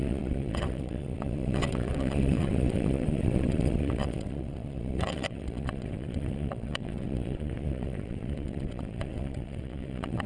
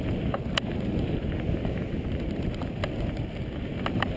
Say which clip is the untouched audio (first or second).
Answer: second